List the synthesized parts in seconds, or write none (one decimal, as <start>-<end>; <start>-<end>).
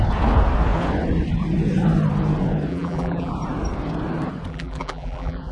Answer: 2.7-3.3; 4.5-5.5